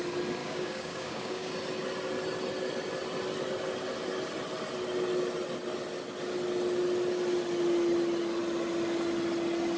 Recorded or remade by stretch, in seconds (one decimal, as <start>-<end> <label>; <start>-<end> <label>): 0.0-0.4 recorded; 0.4-1.5 remade; 1.5-9.8 recorded